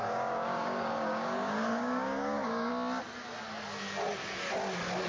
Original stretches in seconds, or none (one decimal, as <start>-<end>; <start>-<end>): 2.7-5.1